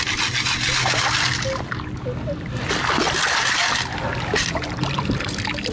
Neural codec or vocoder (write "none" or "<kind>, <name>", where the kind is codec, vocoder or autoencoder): none